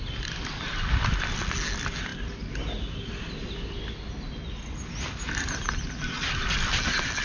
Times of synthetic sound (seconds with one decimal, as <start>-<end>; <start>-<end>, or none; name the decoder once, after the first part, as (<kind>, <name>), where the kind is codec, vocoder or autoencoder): none